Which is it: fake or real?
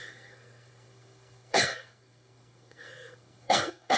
fake